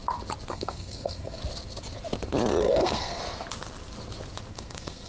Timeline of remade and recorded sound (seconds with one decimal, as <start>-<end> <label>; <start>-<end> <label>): 0.0-0.5 recorded; 0.5-1.4 remade; 1.4-2.6 recorded; 2.6-3.2 remade; 3.2-4.5 recorded; 4.5-5.1 remade